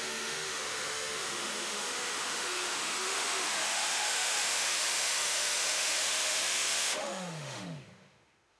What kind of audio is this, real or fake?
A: fake